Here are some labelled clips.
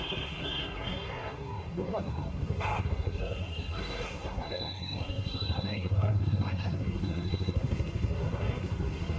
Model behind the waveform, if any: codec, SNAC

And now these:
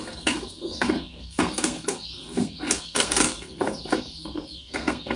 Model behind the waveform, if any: codec, SNAC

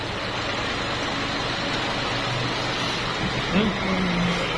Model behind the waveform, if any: none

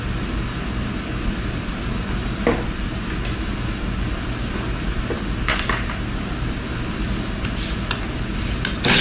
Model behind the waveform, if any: none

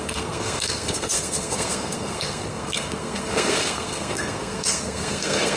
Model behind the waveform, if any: codec, SNAC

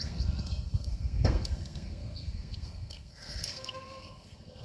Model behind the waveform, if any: codec, SNAC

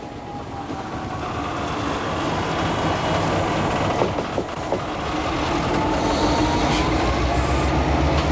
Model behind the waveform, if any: none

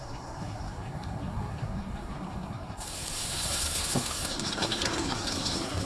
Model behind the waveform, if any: codec, SNAC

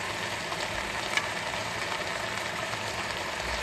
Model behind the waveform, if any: none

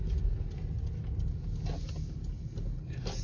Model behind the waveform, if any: none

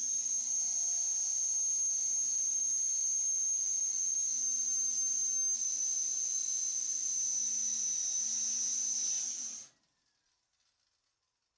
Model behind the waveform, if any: none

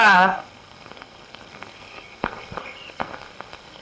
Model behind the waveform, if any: codec, SNAC